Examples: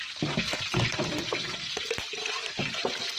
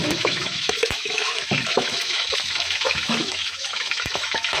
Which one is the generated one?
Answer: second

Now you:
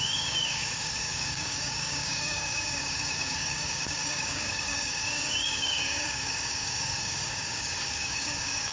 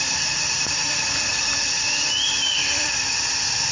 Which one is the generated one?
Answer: first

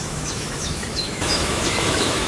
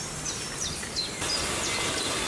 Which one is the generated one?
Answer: first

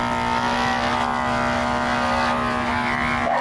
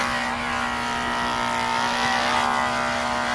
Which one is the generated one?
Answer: second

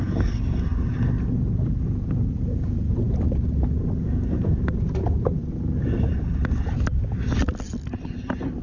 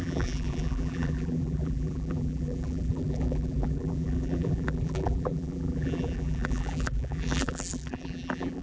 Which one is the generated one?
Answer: second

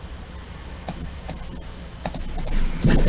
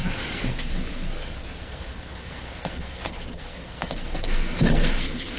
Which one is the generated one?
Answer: second